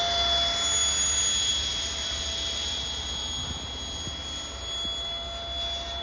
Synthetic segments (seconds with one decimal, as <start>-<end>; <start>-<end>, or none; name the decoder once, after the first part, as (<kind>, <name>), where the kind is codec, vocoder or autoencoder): none